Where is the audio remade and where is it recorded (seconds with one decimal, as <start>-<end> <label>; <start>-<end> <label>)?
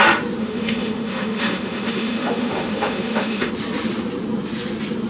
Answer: 0.0-0.4 recorded; 0.4-3.5 remade; 3.5-5.1 recorded